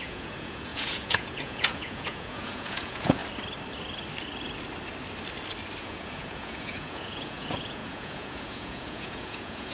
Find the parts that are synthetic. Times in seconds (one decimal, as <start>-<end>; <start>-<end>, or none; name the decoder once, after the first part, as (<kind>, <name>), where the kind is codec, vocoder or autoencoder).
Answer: 0.0-3.2 (vocoder, Vocos); 5.8-9.7